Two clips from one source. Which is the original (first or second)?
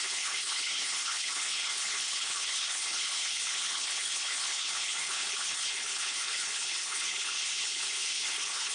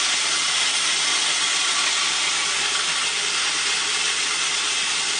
second